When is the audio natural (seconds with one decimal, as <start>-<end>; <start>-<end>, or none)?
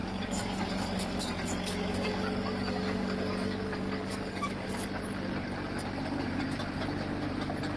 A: 4.7-7.8